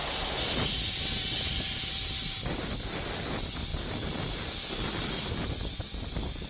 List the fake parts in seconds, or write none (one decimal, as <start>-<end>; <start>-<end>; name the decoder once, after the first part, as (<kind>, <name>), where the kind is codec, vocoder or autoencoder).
none